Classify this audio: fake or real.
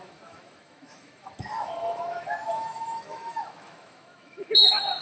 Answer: fake